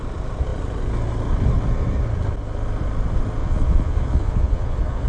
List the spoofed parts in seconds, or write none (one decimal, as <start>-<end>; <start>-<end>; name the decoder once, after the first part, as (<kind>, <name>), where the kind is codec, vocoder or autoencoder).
3.4-5.1 (vocoder, Vocos)